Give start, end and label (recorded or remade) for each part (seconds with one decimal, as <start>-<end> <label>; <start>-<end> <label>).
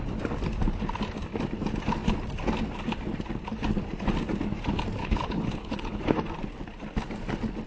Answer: 0.0-5.0 recorded; 5.0-6.0 remade; 6.0-7.7 recorded